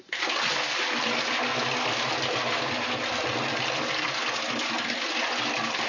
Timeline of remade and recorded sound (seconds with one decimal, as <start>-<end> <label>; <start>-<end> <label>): 0.0-5.9 recorded